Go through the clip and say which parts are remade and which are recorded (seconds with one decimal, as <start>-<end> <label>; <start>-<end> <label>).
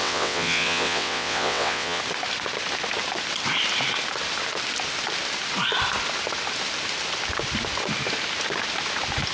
0.0-2.0 remade; 2.0-9.3 recorded